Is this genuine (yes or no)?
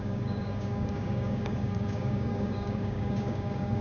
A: no